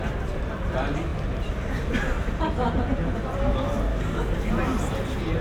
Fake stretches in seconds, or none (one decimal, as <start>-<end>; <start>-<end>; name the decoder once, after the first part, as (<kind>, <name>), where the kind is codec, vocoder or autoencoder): 3.9-4.5 (codec, DAC)